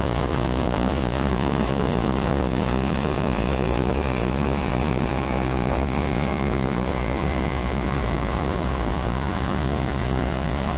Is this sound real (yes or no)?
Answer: no